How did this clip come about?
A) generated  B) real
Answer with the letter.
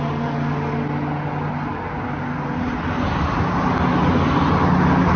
B